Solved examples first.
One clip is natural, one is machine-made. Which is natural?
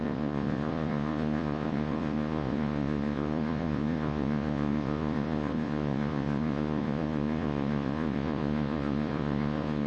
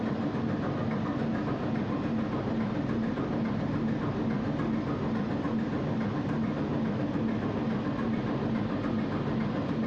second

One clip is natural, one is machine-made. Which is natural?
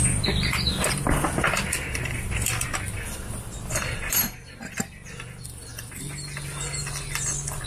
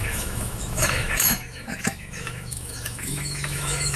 first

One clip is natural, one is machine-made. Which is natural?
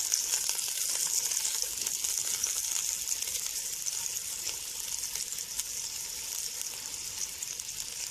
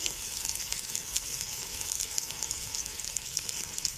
first